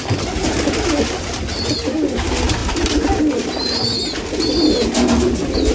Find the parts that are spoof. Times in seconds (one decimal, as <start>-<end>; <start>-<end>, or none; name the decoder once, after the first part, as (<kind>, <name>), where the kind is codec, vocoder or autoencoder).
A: none